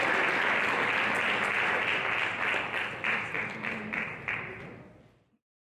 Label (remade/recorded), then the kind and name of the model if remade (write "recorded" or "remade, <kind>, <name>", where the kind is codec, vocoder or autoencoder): recorded